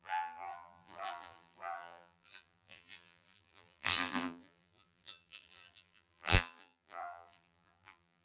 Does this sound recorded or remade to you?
remade